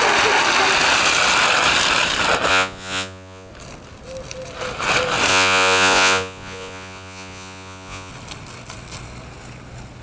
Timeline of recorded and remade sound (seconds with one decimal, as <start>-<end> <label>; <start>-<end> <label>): 0.0-2.5 recorded; 2.5-3.5 remade; 3.5-5.3 recorded; 5.3-8.1 remade; 8.1-10.0 recorded